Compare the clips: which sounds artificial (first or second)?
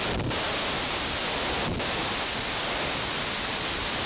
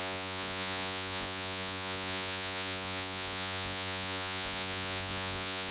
second